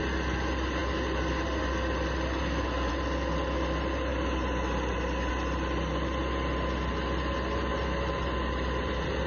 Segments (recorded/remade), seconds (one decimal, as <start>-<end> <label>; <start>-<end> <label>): 0.0-9.3 recorded

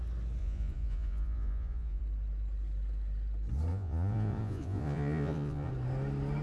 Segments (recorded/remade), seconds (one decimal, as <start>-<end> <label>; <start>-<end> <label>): 0.0-0.4 recorded; 0.4-2.0 remade; 2.0-3.7 recorded; 3.7-5.7 remade; 5.7-6.4 recorded

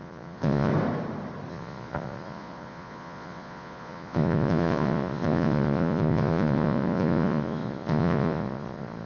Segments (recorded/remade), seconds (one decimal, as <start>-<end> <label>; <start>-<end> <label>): 0.0-0.7 remade; 0.7-1.5 recorded; 1.5-9.1 remade

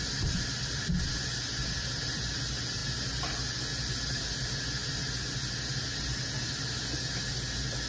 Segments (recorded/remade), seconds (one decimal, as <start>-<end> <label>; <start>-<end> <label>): 0.0-7.9 recorded

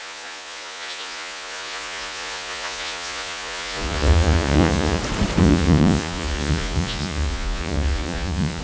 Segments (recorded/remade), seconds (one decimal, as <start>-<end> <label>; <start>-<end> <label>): 0.0-5.0 remade; 5.0-5.4 recorded; 5.4-8.6 remade

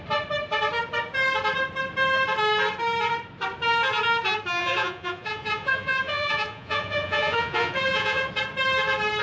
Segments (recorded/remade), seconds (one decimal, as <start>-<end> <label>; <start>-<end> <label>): 0.0-4.6 recorded; 4.6-8.3 remade; 8.3-9.2 recorded

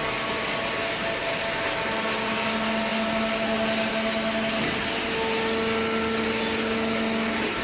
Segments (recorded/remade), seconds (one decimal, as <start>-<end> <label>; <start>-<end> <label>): 0.0-7.6 recorded

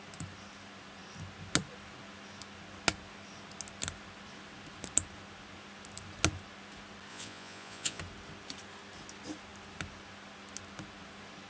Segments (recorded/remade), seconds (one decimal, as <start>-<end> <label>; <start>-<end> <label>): 0.0-7.1 recorded; 7.1-8.0 remade; 8.0-11.5 recorded